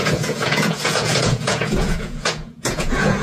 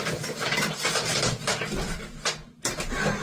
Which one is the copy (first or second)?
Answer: first